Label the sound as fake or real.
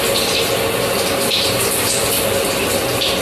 real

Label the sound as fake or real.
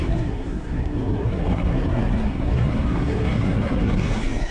fake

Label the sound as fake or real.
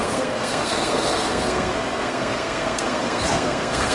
fake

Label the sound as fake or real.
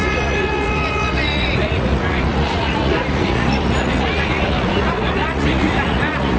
fake